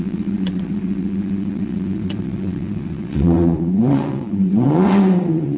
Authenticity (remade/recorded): remade